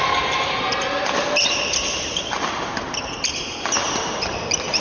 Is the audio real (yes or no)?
yes